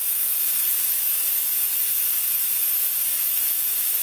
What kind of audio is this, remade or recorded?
remade